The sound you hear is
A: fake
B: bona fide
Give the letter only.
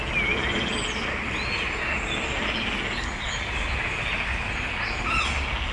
B